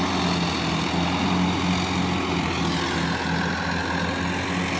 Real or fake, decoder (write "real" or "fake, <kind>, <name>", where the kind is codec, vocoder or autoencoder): real